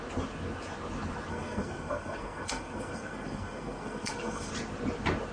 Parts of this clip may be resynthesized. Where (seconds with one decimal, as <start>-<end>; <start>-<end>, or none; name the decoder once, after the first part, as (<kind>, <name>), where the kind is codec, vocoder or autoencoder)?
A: 1.3-4.5 (codec, SNAC)

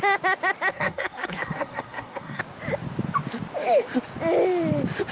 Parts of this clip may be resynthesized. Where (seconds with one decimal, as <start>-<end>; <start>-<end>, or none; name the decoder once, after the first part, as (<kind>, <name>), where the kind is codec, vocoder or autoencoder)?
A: 0.7-2.4 (codec, SNAC)

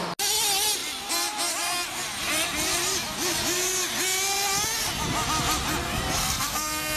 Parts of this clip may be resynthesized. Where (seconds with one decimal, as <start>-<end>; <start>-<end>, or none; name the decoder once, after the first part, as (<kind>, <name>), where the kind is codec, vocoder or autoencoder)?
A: 6.2-7.0 (codec, SNAC)

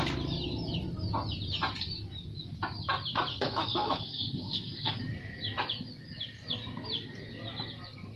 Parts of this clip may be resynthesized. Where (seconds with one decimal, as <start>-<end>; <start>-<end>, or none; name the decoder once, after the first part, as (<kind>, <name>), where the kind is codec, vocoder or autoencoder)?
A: 3.3-5.0 (codec, SNAC)

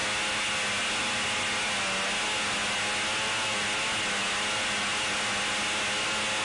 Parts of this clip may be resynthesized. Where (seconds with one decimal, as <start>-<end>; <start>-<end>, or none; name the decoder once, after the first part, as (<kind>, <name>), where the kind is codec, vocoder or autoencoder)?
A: none

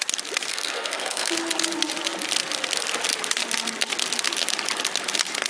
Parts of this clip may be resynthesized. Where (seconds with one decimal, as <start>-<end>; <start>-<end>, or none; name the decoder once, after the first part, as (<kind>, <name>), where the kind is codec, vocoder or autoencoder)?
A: 0.5-1.3 (codec, SNAC)

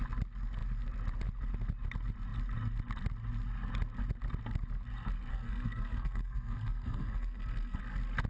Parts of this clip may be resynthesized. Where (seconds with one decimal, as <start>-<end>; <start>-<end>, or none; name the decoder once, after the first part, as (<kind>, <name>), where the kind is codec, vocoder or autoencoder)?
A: 5.3-7.8 (codec, SNAC)

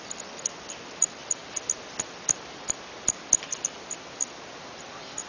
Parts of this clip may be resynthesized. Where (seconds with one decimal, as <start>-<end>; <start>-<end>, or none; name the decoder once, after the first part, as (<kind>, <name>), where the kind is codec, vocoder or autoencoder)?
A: none